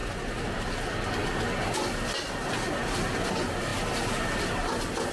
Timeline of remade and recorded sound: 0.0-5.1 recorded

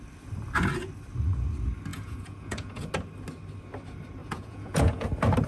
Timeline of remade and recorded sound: 0.0-1.9 recorded; 1.9-2.9 remade; 2.9-4.2 recorded; 4.2-5.1 remade; 5.1-5.5 recorded

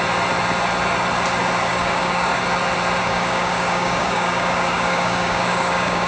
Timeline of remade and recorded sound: 0.0-1.7 recorded; 1.7-2.4 remade; 2.4-3.0 recorded; 3.0-6.1 remade

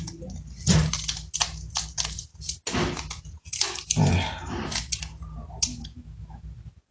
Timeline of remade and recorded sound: 0.0-5.7 recorded; 5.7-6.4 remade; 6.4-6.9 recorded